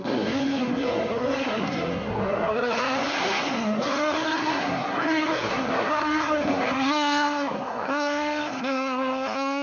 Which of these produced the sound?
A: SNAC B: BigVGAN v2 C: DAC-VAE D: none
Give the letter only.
A